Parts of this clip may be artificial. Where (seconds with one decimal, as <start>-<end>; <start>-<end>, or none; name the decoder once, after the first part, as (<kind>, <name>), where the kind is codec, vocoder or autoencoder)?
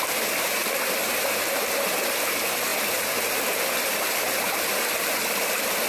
none